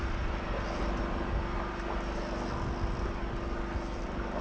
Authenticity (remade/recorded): recorded